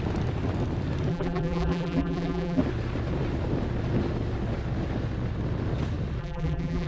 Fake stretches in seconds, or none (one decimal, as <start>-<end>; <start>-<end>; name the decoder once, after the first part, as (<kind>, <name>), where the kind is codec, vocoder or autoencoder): 1.1-2.6 (vocoder, BigVGAN v2); 6.2-6.9